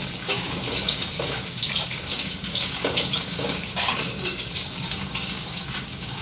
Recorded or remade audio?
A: remade